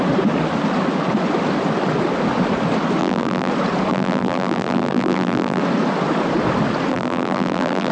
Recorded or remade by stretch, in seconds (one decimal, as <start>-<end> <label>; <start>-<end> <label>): 0.0-3.0 recorded; 3.0-3.5 remade; 3.5-3.9 recorded; 3.9-5.6 remade; 5.6-6.9 recorded; 6.9-7.9 remade